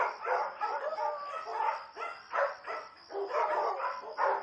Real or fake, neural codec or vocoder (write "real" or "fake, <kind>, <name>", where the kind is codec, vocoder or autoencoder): real